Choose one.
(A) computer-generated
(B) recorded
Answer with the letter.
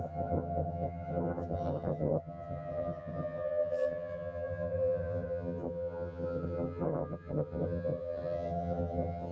A